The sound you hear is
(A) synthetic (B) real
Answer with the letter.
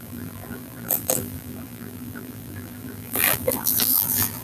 A